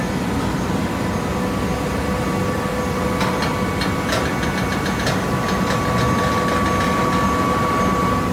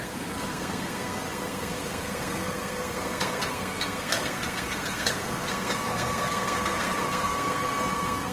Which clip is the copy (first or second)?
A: second